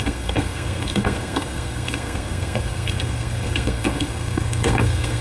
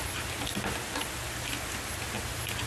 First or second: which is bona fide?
second